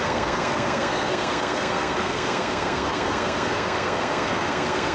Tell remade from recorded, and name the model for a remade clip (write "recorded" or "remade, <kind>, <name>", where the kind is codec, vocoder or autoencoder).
remade, codec, SNAC